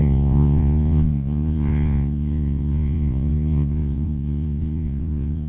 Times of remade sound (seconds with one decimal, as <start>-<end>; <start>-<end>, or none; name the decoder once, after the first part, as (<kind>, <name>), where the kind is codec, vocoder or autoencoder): 0.0-5.5 (vocoder, Vocos)